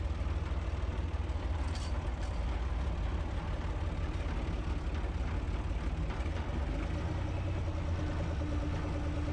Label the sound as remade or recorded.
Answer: recorded